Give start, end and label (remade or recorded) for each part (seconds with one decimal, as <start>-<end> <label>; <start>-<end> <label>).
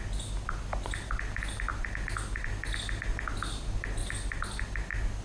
0.0-5.2 recorded